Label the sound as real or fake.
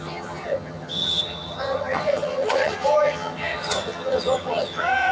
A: fake